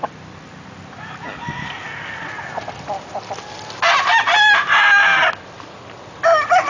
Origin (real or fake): real